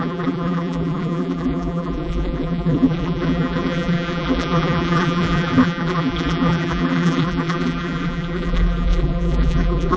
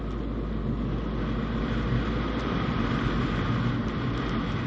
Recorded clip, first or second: second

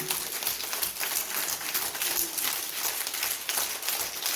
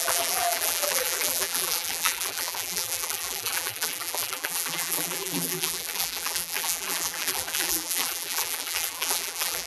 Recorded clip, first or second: first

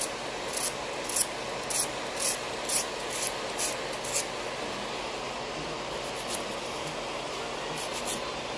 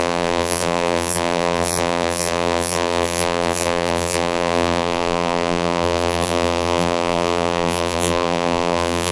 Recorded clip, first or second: first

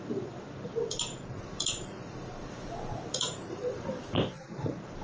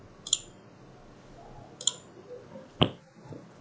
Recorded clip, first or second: second